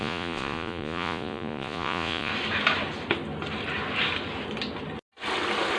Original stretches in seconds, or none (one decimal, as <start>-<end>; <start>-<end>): 2.3-5.8